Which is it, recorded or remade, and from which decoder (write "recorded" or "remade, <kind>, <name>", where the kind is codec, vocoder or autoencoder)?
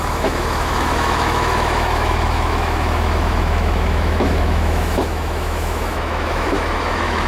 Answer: remade, autoencoder, DAC-VAE